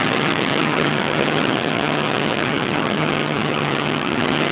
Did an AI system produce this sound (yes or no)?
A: yes